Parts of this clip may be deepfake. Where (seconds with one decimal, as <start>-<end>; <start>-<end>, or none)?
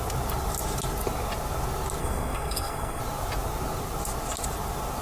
2.0-3.0